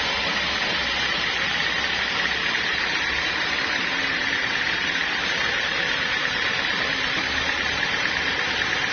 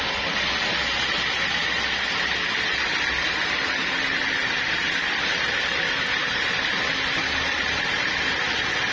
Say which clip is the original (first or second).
second